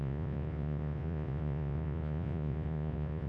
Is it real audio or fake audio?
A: fake